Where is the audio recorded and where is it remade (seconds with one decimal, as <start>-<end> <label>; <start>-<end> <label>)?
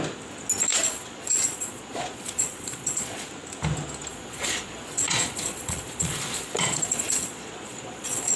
0.0-0.7 recorded; 0.7-3.3 remade; 3.3-4.1 recorded; 4.1-8.4 remade